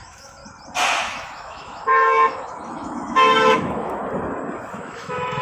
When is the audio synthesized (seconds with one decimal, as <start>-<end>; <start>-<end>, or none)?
0.0-0.4; 1.0-4.0; 4.7-5.4